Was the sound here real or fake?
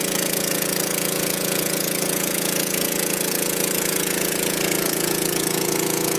fake